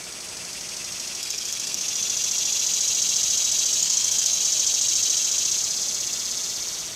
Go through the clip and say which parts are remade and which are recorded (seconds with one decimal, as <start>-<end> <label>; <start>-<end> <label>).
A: 0.0-1.2 recorded; 1.2-1.8 remade; 1.8-3.8 recorded; 3.8-4.4 remade; 4.4-7.0 recorded